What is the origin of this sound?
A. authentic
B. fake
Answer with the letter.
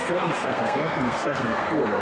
B